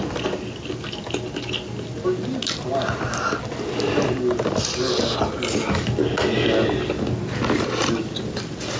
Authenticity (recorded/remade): recorded